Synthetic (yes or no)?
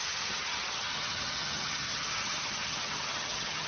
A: yes